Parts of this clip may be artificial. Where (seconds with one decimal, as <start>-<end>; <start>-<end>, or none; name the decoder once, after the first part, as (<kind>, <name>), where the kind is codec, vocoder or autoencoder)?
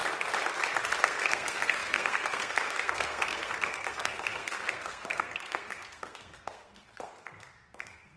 1.0-8.2 (codec, SNAC)